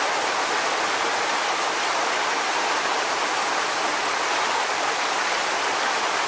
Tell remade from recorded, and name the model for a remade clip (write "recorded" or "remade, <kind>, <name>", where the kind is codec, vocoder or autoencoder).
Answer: recorded